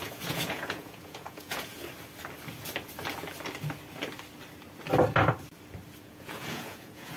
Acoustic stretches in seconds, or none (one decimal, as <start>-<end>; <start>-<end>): 1.8-6.0